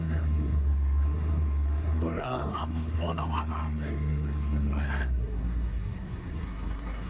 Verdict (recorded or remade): remade